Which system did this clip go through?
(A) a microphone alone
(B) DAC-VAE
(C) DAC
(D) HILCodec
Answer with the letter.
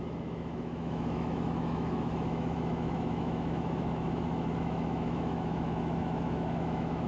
B